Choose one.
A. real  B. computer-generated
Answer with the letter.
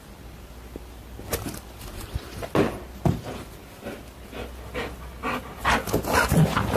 A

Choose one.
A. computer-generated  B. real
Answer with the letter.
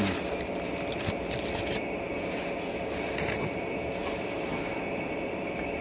B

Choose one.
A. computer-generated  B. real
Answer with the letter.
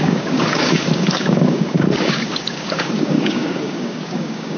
A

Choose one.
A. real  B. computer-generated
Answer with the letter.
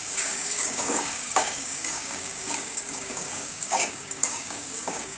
B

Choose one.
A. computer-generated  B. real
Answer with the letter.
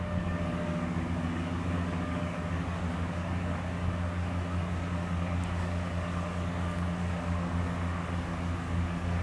A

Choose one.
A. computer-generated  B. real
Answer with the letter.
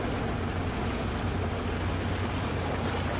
B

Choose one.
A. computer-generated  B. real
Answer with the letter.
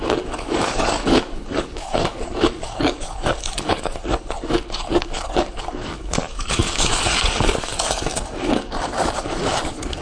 A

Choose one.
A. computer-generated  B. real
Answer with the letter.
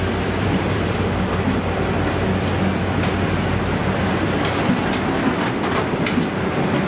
B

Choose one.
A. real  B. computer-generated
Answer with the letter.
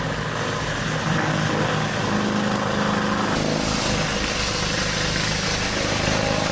A